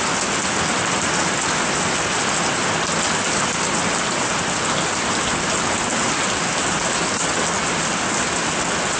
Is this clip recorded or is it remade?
recorded